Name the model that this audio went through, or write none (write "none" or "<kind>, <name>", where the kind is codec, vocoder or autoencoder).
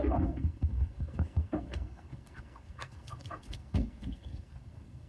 codec, SNAC